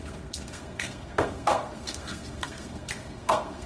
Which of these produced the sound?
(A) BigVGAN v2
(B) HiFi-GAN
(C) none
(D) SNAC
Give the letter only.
D